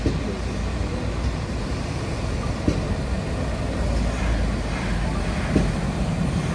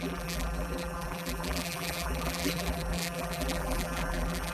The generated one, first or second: second